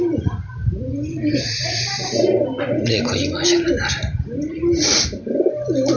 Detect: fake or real real